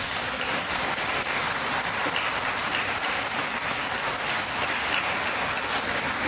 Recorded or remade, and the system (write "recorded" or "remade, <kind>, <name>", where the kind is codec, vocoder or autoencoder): recorded